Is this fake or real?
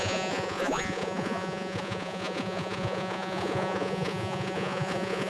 fake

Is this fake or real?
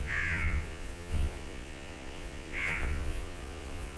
fake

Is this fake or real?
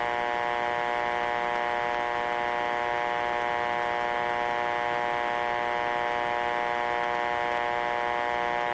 real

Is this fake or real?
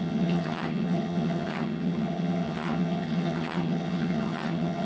fake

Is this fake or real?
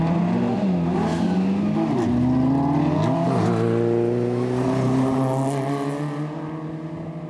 real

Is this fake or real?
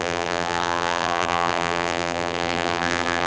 fake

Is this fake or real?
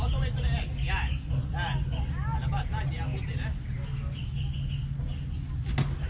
real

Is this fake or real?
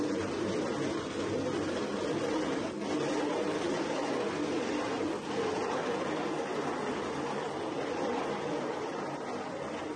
real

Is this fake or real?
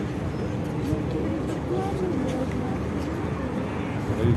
real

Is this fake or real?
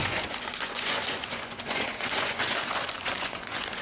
fake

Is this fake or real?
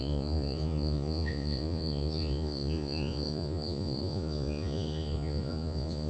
fake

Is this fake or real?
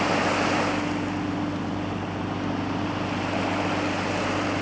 real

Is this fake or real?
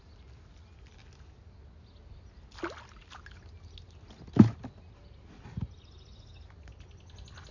real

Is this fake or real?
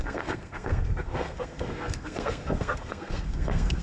fake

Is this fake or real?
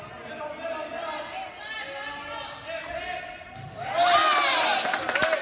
real